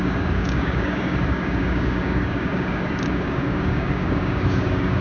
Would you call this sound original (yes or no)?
no